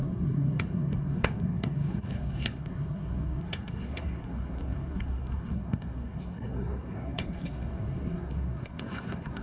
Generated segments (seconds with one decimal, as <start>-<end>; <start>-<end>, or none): 0.0-9.4